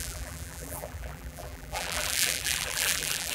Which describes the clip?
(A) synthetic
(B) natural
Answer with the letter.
A